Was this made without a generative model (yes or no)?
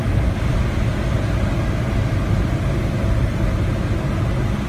yes